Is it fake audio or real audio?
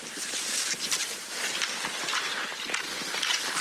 real